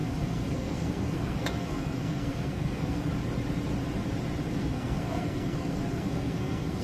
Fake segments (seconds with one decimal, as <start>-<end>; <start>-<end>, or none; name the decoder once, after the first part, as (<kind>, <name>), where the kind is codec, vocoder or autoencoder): 0.0-3.1 (codec, SNAC); 4.5-6.8